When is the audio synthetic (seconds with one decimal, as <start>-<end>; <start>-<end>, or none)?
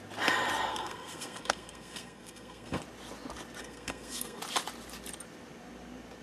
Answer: 0.7-2.8; 3.6-4.4